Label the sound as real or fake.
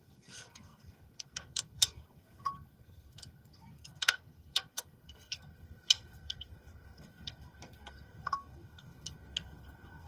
fake